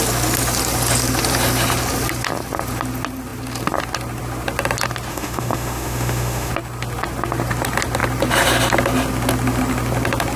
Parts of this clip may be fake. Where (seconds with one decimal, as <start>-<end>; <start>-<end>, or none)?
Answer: 5.1-6.5